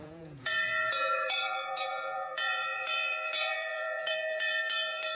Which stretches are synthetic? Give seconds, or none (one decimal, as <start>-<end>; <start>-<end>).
0.0-5.1